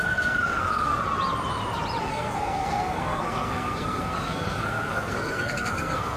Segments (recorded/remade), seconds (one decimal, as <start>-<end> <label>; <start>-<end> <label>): 0.0-0.9 remade; 0.9-2.0 recorded; 2.0-6.2 remade